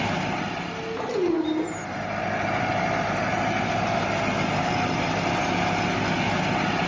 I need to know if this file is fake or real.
real